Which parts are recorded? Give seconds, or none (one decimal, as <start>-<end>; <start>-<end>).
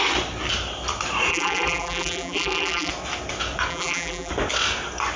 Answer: 0.0-1.3; 2.9-3.7; 4.3-5.2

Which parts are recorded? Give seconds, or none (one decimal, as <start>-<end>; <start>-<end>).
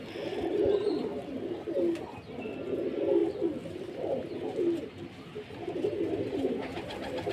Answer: 0.0-7.3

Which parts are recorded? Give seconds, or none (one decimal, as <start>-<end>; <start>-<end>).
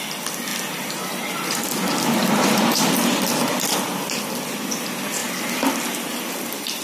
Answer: 0.0-0.5; 3.6-6.8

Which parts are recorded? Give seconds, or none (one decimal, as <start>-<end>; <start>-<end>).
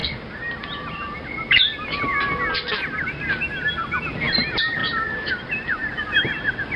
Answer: 2.1-4.1; 4.8-5.3; 5.8-6.8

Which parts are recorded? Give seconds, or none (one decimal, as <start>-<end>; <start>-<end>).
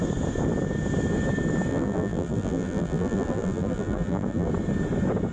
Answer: 0.0-1.7; 4.5-5.3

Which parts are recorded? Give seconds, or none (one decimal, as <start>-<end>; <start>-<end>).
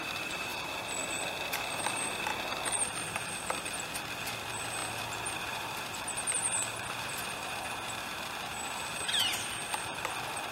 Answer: 0.5-1.8; 2.3-4.2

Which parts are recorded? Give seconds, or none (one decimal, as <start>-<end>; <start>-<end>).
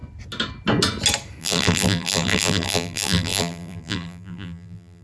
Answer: 0.0-1.4